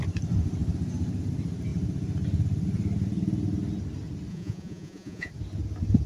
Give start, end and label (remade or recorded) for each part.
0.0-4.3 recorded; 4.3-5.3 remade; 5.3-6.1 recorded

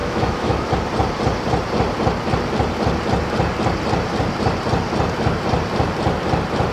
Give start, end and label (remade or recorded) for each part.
0.0-0.7 remade; 0.7-6.7 recorded

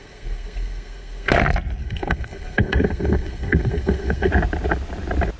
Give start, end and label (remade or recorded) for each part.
0.0-1.3 remade; 1.3-1.8 recorded; 1.8-4.3 remade; 4.3-5.4 recorded

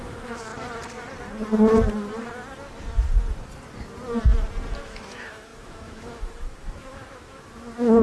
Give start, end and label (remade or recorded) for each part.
0.0-0.5 remade; 0.5-4.8 recorded; 4.8-8.0 remade

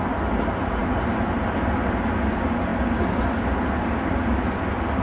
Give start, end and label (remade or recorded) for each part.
0.0-5.0 recorded

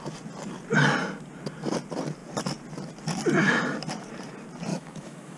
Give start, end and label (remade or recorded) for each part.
0.0-4.7 recorded; 4.7-5.4 remade

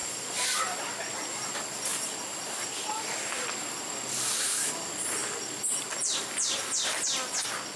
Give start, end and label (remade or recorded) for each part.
0.0-7.8 recorded

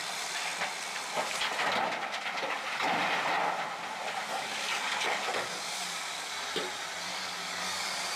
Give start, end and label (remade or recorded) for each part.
0.0-4.3 recorded; 4.3-6.3 remade; 6.3-7.1 recorded; 7.1-8.2 remade